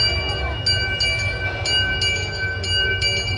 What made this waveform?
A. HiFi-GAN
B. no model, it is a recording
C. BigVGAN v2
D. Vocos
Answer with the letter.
B